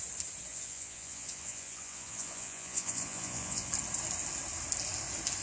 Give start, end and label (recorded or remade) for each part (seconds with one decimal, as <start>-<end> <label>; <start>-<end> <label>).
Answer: 0.0-0.5 recorded; 0.5-3.7 remade; 3.7-5.4 recorded